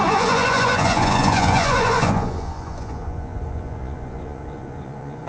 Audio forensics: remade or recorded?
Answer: remade